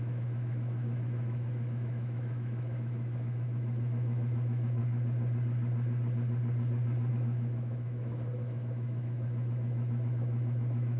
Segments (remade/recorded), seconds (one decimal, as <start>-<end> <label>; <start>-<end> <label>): 0.0-4.8 remade; 4.8-7.1 recorded; 7.1-11.0 remade